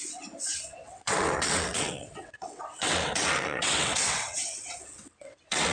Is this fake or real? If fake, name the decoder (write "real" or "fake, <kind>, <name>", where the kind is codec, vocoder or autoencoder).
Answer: fake, vocoder, WaveNeXt